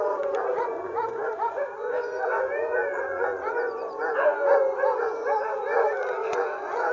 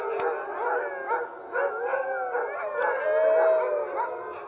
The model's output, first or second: first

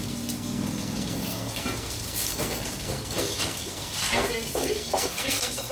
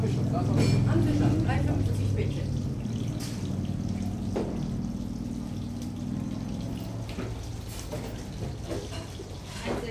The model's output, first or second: first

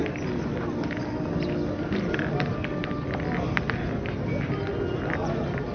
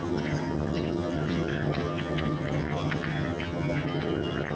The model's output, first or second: second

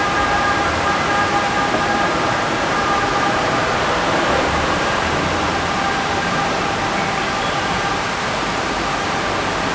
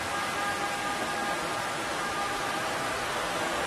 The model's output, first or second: first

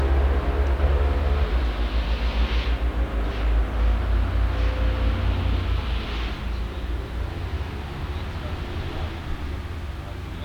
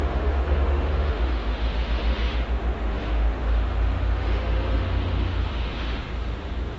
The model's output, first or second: second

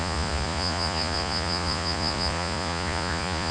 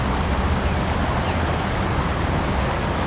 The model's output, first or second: first